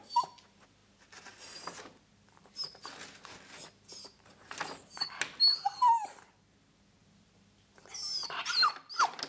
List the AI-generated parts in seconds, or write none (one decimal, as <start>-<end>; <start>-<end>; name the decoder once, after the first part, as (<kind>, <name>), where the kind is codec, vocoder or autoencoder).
none